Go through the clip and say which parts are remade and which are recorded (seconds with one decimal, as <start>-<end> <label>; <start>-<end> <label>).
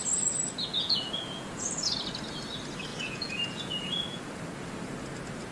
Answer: 0.0-0.7 recorded; 0.7-1.9 remade; 1.9-2.9 recorded; 2.9-4.2 remade; 4.2-5.5 recorded